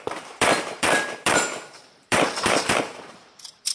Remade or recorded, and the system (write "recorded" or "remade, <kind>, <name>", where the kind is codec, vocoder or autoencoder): remade, vocoder, BigVGAN v2